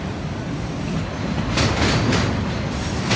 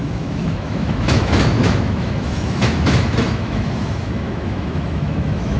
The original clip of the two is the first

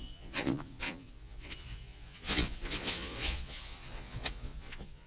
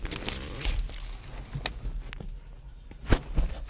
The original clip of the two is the second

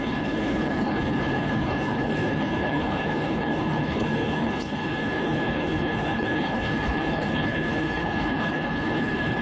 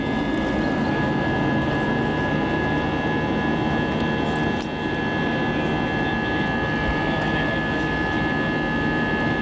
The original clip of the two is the second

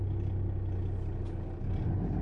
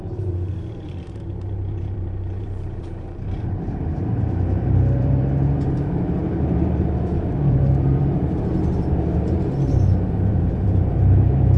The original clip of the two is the first